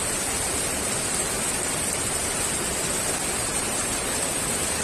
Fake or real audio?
real